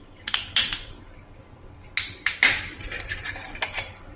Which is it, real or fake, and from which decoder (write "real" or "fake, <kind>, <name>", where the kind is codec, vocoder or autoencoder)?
real